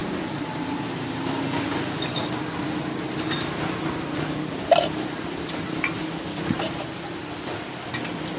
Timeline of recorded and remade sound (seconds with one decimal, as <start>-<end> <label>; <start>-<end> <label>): 0.0-8.4 recorded